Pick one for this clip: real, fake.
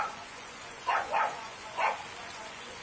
fake